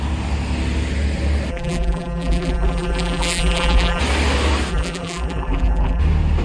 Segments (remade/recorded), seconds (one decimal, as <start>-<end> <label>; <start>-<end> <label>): 0.0-1.5 recorded; 1.5-4.0 remade; 4.0-4.7 recorded; 4.7-6.0 remade; 6.0-6.4 recorded